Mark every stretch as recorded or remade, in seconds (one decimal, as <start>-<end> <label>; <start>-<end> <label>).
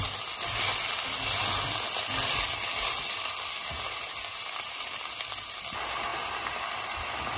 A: 0.0-6.1 recorded; 6.1-7.4 remade